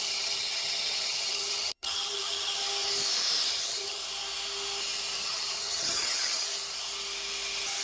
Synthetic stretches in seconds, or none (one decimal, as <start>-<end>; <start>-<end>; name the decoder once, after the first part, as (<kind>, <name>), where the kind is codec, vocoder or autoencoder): 0.0-2.6 (vocoder, HiFi-GAN); 3.5-4.0; 5.2-6.5